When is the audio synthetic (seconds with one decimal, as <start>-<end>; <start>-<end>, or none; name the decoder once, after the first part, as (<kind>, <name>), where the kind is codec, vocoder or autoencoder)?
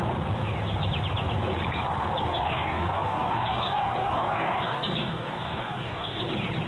2.2-6.2 (codec, DAC)